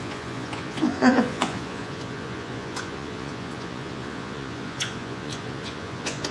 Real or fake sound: fake